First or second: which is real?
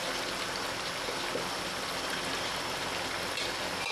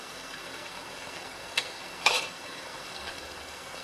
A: first